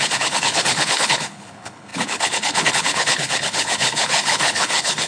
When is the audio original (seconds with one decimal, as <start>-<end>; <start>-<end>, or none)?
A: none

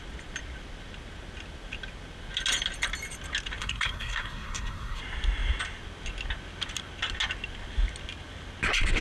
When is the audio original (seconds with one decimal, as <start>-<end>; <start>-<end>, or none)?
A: 0.0-3.6; 5.0-9.0

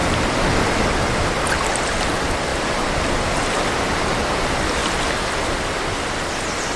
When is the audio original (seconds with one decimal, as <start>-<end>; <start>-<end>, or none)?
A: 0.0-6.8

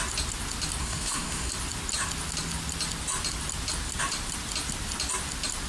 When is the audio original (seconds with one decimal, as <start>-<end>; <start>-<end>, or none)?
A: 0.0-0.8; 1.5-5.7

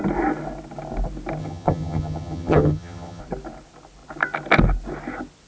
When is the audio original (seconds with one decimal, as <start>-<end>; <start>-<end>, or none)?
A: 0.0-1.4; 3.2-5.5